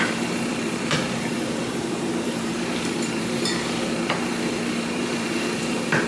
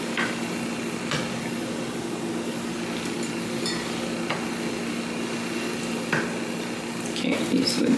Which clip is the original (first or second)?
second